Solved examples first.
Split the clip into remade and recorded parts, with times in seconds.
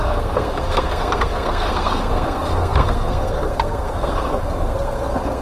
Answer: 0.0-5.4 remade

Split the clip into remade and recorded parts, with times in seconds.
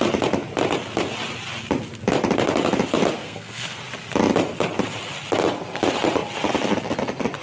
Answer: 0.0-3.2 recorded; 3.2-3.8 remade; 3.8-7.4 recorded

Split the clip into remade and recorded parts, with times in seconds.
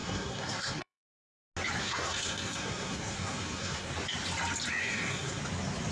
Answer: 0.0-1.1 remade; 1.1-1.8 recorded; 1.8-3.9 remade; 3.9-4.8 recorded; 4.8-5.4 remade; 5.4-5.9 recorded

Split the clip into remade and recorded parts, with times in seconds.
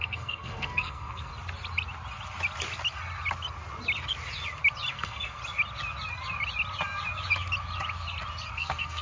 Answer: 0.0-1.3 remade; 1.3-4.9 recorded; 4.9-5.4 remade; 5.4-8.5 recorded; 8.5-9.0 remade